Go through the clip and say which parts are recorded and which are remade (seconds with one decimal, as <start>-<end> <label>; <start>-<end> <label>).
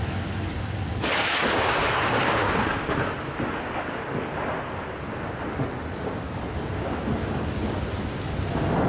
0.0-1.2 recorded; 1.2-2.5 remade; 2.5-8.9 recorded